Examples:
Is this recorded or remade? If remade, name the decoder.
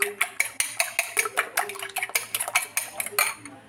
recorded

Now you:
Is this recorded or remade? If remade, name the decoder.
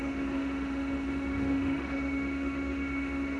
remade, autoencoder, DAC-VAE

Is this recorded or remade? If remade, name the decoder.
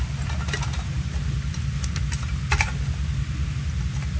recorded